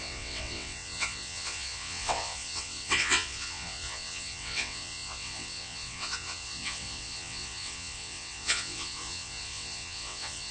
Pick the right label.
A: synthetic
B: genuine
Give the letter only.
A